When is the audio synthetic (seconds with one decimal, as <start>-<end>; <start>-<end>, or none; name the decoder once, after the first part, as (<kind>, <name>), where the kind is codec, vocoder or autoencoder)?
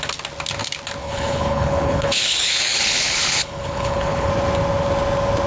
1.0-4.3 (codec, HILCodec)